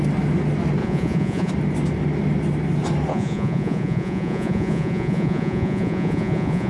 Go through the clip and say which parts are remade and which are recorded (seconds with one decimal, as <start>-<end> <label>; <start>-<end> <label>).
0.0-0.8 recorded; 0.8-1.5 remade; 1.5-3.1 recorded; 3.1-6.7 remade